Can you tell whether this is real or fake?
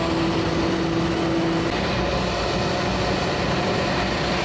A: real